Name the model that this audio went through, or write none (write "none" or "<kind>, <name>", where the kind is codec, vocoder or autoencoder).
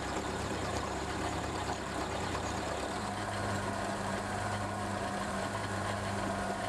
vocoder, BigVGAN v2